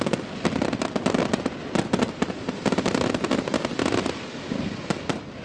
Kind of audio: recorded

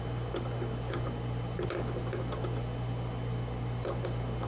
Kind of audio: recorded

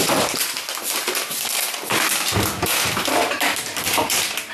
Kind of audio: recorded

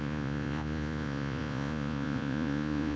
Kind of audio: remade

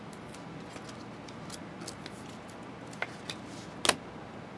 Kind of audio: recorded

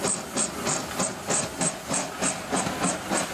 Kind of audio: recorded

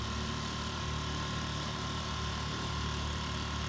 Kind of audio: remade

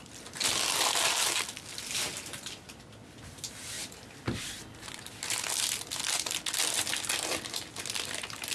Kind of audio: recorded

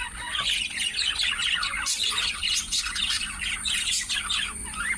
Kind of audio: remade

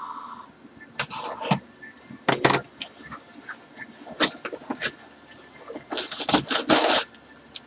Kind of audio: recorded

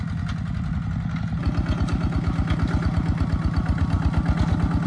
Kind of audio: recorded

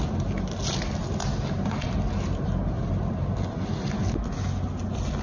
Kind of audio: recorded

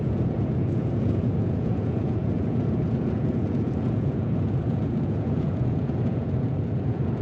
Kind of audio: remade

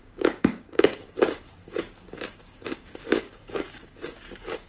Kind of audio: remade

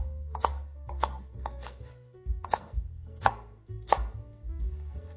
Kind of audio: remade